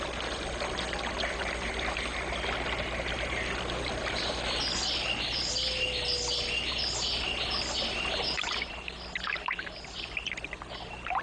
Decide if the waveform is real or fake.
real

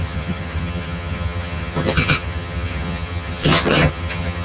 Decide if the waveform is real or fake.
fake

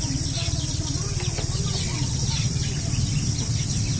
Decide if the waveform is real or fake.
real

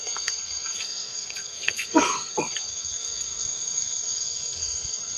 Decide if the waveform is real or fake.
fake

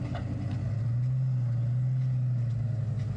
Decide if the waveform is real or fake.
real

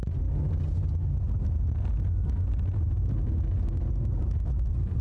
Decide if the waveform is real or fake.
real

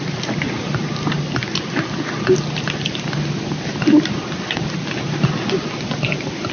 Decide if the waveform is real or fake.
real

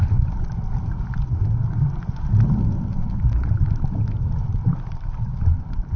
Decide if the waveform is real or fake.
real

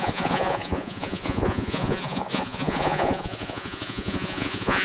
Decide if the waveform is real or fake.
fake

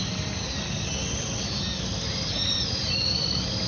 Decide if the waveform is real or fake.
real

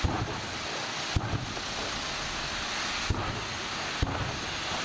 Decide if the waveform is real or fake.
real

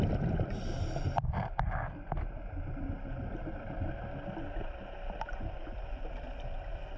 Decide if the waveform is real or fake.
real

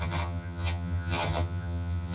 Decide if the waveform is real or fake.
fake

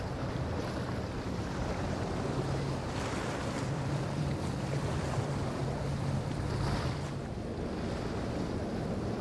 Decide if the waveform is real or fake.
fake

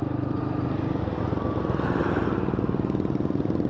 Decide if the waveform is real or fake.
real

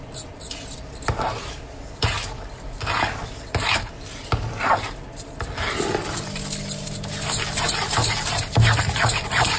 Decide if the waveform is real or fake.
real